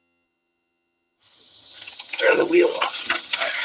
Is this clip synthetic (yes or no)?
yes